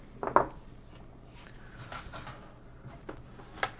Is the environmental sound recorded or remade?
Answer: recorded